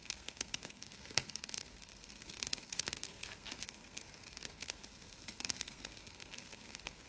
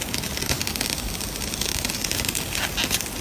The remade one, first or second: first